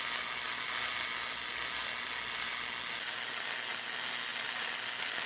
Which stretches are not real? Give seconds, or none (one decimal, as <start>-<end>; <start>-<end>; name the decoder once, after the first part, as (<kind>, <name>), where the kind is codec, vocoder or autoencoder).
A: none